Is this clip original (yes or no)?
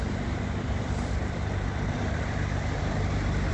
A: no